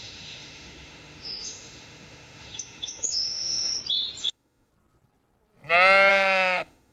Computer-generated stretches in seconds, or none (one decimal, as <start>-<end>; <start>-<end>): 0.0-3.7; 4.2-4.7; 6.1-6.9